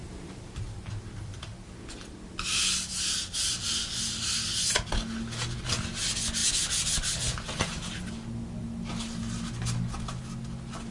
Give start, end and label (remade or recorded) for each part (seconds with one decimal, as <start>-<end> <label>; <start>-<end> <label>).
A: 0.0-0.9 remade; 0.9-10.9 recorded